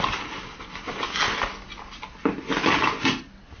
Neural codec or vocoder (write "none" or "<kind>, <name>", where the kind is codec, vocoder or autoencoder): none